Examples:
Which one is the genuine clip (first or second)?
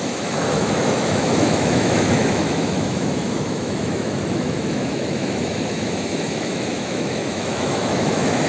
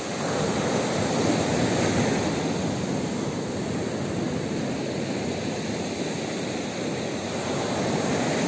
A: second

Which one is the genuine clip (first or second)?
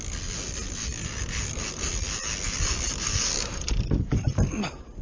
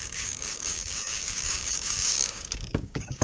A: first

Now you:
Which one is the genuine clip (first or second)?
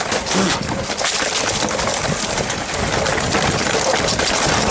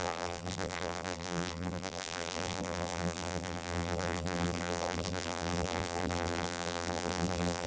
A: first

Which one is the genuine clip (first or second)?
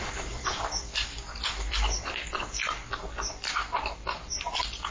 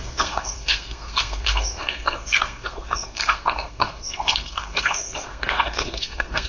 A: first